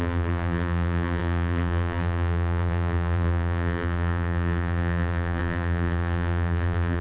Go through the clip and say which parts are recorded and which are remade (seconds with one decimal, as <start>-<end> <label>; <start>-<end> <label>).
0.0-7.0 remade